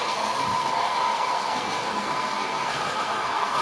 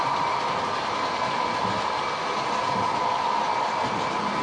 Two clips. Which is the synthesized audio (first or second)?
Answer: first